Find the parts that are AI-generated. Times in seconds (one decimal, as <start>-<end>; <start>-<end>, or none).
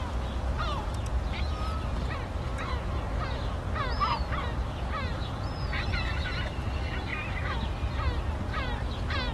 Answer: 5.1-6.1